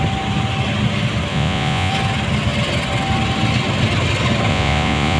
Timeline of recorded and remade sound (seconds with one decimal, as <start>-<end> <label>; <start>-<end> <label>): 0.0-1.3 recorded; 1.3-1.9 remade; 1.9-4.5 recorded; 4.5-5.2 remade